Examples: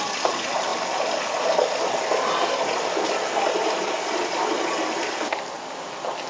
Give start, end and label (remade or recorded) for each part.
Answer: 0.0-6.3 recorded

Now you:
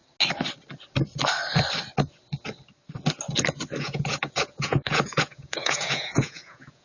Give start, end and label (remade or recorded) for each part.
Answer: 0.0-3.8 recorded; 3.8-6.8 remade

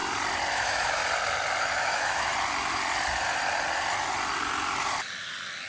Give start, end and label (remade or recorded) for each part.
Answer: 0.0-0.5 recorded; 0.5-1.0 remade; 1.0-1.6 recorded; 1.6-2.3 remade; 2.3-5.7 recorded